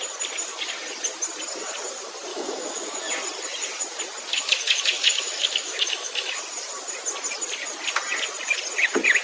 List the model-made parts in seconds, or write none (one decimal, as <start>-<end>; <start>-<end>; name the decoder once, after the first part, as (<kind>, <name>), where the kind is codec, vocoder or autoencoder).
2.3-3.1 (autoencoder, DAC-VAE); 4.3-6.4